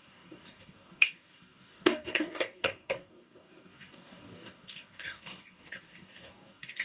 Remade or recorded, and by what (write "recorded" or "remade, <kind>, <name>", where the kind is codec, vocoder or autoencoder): remade, codec, DAC